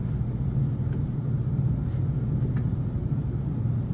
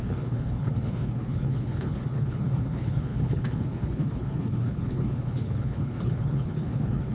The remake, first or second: second